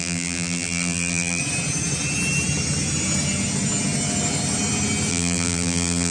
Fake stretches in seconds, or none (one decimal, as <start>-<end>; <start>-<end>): 0.0-1.4; 5.1-6.1